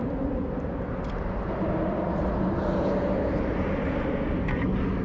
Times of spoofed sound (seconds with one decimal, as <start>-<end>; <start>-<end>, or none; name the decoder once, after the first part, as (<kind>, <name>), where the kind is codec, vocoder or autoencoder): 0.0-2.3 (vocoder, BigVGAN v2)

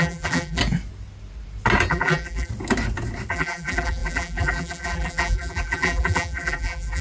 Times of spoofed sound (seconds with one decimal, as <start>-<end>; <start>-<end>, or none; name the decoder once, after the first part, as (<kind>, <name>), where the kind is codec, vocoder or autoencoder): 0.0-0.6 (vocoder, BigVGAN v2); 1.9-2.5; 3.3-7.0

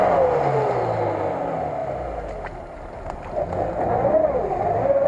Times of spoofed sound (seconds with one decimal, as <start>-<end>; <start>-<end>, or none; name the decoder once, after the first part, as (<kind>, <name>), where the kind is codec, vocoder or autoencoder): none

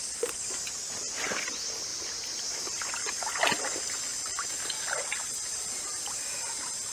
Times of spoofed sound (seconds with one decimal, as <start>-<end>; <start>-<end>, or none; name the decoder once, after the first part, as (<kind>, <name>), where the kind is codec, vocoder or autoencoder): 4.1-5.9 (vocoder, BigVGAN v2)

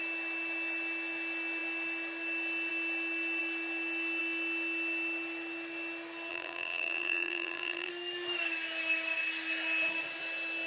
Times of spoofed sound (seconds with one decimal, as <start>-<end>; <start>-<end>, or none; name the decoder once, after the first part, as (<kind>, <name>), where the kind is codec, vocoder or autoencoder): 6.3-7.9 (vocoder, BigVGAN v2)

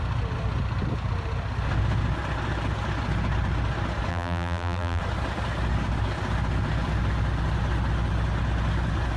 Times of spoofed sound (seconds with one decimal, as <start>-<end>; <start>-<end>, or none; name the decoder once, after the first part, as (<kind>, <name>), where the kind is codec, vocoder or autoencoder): 4.1-5.0 (vocoder, BigVGAN v2)

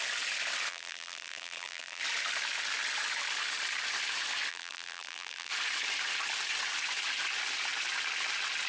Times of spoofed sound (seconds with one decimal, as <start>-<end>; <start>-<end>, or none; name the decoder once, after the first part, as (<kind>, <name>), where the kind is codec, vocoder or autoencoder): 0.7-2.0 (vocoder, BigVGAN v2); 4.5-5.5

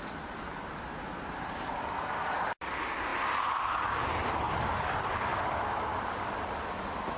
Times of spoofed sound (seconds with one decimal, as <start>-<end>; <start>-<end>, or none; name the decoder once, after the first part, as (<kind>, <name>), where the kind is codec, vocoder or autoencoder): 1.1-1.7 (vocoder, BigVGAN v2); 5.3-6.6